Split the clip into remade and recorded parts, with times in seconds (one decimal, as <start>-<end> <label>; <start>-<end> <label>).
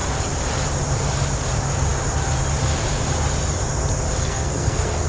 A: 0.0-4.2 recorded; 4.2-5.1 remade